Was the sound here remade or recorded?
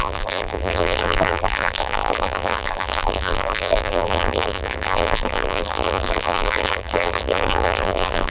remade